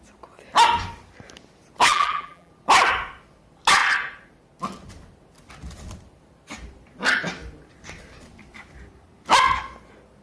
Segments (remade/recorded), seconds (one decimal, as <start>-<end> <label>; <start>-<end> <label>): 0.0-1.9 recorded; 1.9-2.5 remade; 2.5-10.2 recorded